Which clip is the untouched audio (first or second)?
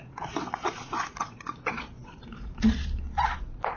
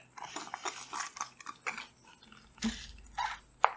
second